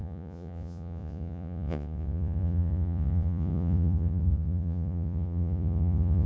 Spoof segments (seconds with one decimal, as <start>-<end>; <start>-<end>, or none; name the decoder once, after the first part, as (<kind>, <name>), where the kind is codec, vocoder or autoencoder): 0.0-6.3 (vocoder, Vocos)

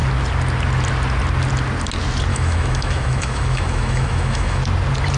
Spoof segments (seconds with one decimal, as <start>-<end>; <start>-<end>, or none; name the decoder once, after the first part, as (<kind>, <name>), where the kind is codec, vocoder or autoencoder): 2.3-4.6 (autoencoder, DAC-VAE)

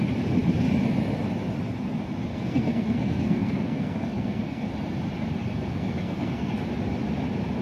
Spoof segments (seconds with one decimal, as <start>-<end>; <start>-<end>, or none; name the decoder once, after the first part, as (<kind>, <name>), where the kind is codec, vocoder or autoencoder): 2.3-4.7 (codec, SNAC); 5.4-6.5

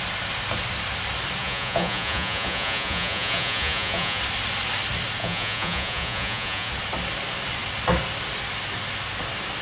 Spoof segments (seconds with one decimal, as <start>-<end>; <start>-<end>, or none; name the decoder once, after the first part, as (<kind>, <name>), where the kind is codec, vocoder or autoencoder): 1.4-4.2 (vocoder, Vocos); 5.2-6.7

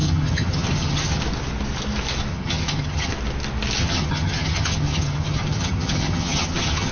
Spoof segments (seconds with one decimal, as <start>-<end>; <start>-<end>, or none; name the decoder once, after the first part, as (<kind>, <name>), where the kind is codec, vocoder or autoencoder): 0.0-1.2 (vocoder, HiFi-GAN); 2.3-3.1; 3.8-6.9